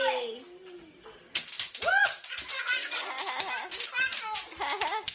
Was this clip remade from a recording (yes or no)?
no